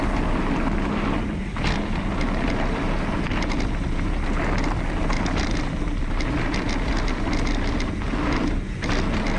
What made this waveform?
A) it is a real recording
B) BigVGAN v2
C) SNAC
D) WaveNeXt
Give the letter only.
A